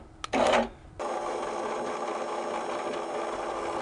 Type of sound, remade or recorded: recorded